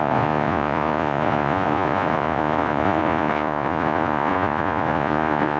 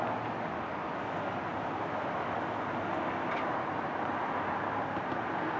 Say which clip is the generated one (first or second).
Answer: first